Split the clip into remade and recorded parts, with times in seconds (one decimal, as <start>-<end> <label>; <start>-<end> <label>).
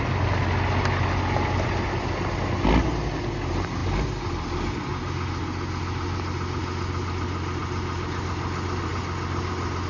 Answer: 0.0-9.9 recorded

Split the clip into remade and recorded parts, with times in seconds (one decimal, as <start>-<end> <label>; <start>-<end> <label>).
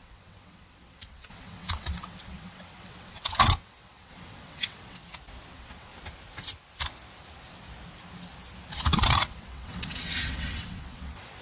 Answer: 0.0-5.0 remade; 5.0-5.5 recorded; 5.5-5.9 remade; 5.9-8.8 recorded; 8.8-11.4 remade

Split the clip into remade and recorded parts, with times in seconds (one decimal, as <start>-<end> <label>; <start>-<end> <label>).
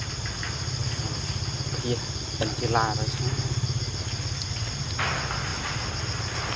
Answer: 0.0-6.6 recorded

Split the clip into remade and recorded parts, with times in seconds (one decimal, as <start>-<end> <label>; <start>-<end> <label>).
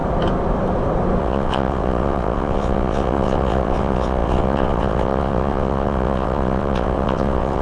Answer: 0.0-1.2 recorded; 1.2-7.6 remade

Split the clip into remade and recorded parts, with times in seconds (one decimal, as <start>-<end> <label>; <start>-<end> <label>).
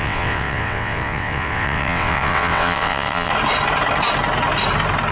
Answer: 0.0-3.3 remade; 3.3-5.1 recorded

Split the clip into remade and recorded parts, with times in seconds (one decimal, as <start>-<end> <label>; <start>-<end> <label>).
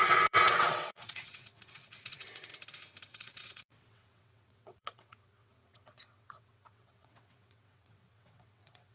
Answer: 0.0-2.5 remade; 2.5-3.1 recorded; 3.1-8.9 remade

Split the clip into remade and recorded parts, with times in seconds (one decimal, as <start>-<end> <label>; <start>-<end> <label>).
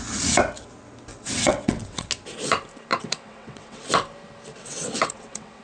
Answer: 0.0-1.1 recorded; 1.1-2.1 remade; 2.1-2.9 recorded; 2.9-3.9 remade; 3.9-4.5 recorded; 4.5-5.6 remade